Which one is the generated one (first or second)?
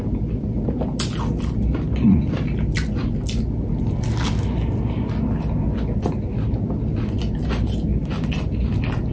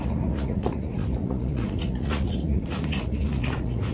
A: second